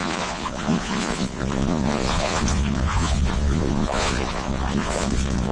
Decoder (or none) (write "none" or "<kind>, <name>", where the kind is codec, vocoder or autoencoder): vocoder, Vocos